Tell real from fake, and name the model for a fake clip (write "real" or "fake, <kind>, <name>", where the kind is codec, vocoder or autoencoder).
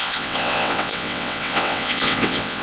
fake, vocoder, WaveNeXt